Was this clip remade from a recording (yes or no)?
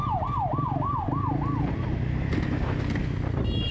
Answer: no